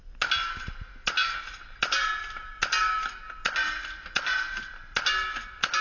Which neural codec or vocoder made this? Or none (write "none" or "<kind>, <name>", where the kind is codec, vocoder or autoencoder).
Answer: none